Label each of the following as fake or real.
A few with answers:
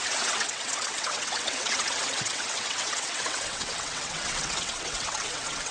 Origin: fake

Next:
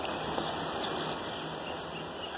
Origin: real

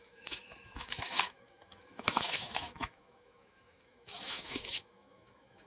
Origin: fake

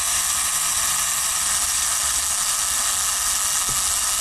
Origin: real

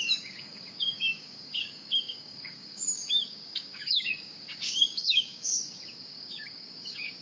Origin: fake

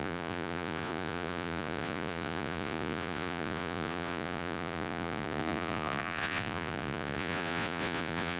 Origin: fake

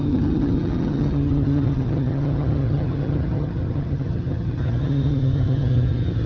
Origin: fake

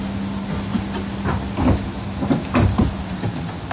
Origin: real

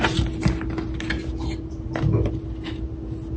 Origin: real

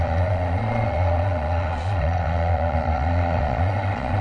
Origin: fake